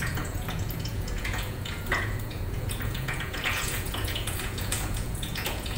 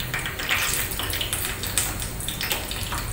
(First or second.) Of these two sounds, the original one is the second